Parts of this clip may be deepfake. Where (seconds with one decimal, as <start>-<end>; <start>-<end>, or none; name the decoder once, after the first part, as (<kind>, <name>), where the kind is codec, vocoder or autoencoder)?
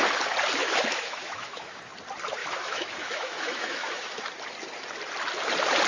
0.6-1.8 (autoencoder, DAC-VAE); 2.4-4.3